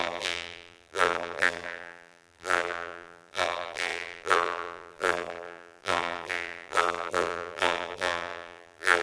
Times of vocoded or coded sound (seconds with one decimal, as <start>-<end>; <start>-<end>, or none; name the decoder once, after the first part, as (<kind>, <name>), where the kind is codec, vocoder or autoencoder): 0.0-9.0 (vocoder, BigVGAN v2)